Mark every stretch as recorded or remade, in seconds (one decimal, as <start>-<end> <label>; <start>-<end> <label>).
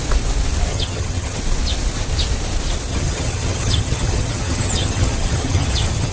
0.0-0.7 recorded; 0.7-1.4 remade; 1.4-2.9 recorded; 2.9-6.1 remade